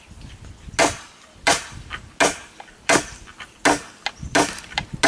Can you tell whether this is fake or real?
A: real